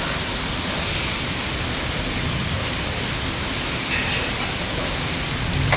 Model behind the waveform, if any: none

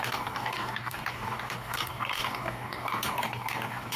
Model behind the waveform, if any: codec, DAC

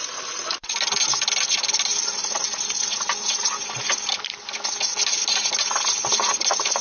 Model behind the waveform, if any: none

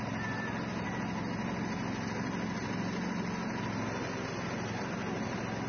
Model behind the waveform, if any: none